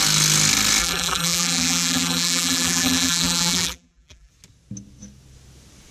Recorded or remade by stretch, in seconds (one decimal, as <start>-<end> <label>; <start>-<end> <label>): 0.0-0.8 recorded; 0.8-4.3 remade; 4.3-5.9 recorded